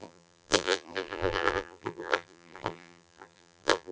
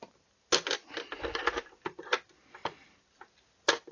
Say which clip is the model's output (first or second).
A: first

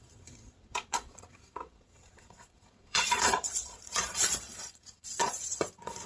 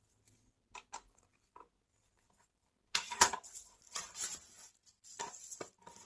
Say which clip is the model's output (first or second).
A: first